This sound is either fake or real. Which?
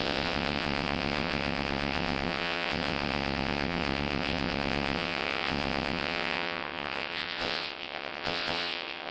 fake